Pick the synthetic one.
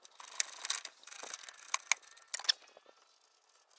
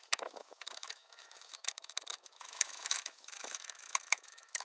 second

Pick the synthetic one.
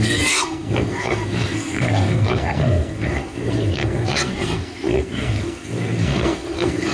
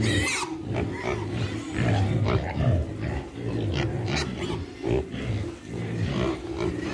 first